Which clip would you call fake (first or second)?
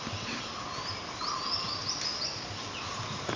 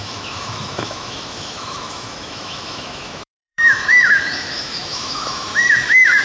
second